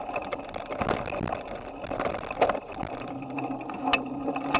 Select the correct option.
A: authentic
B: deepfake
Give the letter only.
A